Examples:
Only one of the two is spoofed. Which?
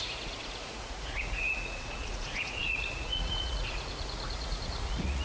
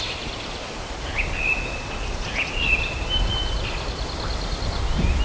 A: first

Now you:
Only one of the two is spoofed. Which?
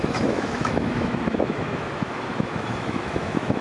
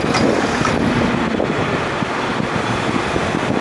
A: first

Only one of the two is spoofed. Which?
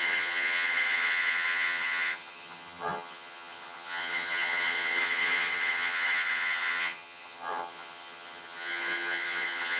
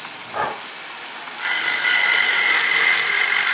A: first